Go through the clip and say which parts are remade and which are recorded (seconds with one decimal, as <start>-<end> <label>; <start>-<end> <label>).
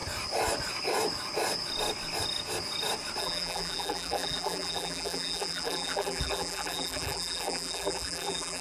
0.0-3.2 recorded; 3.2-8.6 remade